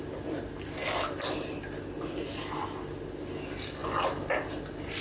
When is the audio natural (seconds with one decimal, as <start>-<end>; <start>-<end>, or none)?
0.0-5.0